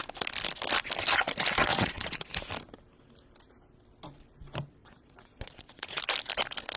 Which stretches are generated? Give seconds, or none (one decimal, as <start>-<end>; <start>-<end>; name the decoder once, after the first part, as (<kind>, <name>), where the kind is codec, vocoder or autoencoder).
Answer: 1.7-2.3 (vocoder, Vocos); 4.8-6.0